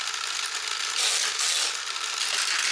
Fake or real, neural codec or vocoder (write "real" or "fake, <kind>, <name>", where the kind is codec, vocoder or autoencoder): real